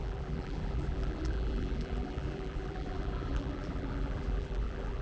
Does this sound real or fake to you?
fake